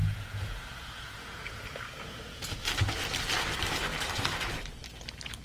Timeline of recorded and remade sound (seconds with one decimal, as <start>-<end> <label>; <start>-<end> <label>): 0.0-2.6 remade; 2.6-5.4 recorded